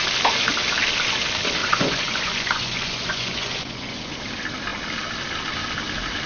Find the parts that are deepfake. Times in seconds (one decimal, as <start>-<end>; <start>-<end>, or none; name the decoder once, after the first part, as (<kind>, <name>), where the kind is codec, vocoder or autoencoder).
1.6-4.1 (vocoder, Vocos)